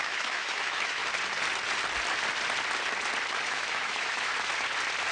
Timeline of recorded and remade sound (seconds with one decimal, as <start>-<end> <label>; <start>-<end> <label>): 0.0-1.0 remade; 1.0-3.3 recorded; 3.3-4.3 remade; 4.3-5.1 recorded